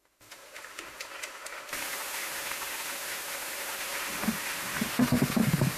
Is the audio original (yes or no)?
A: no